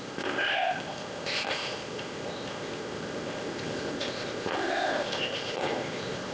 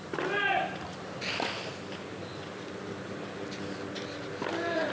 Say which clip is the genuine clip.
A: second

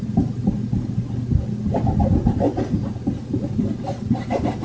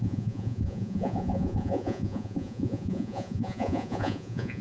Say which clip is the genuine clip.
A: first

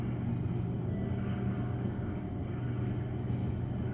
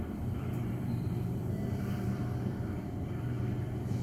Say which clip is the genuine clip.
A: first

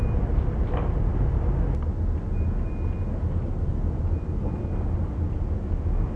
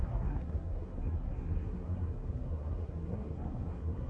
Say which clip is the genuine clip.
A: first